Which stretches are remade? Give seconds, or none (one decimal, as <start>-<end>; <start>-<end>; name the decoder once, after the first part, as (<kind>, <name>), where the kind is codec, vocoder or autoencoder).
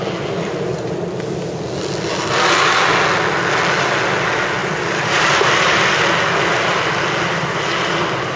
4.6-6.1 (vocoder, BigVGAN v2)